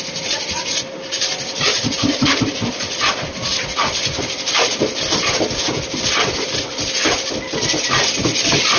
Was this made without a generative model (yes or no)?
yes